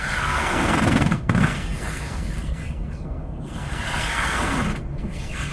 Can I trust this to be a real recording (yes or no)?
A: no